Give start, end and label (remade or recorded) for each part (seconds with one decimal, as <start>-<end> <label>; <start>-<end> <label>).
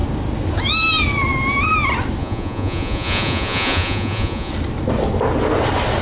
0.0-2.2 recorded; 2.2-4.5 remade; 4.5-6.0 recorded